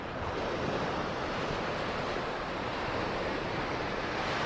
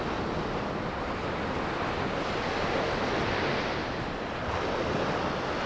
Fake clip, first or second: first